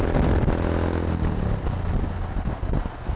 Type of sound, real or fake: real